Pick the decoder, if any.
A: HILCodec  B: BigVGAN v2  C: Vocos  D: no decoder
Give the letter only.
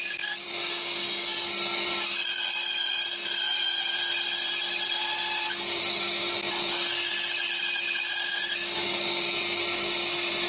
D